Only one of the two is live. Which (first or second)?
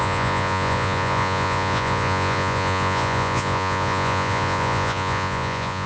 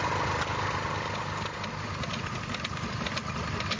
second